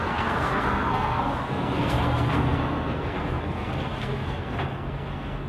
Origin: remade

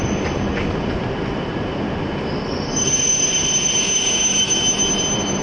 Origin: recorded